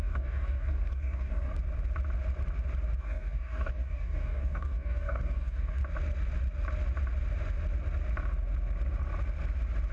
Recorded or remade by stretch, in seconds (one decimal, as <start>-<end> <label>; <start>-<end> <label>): 0.0-1.5 remade; 1.5-3.0 recorded; 3.0-5.8 remade; 5.8-9.9 recorded